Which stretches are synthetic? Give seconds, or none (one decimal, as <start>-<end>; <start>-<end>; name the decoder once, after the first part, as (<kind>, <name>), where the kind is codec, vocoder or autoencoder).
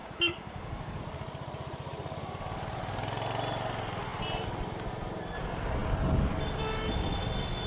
0.0-1.0 (codec, DAC)